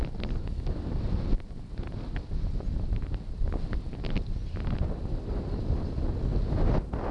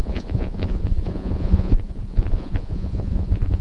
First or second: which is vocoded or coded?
second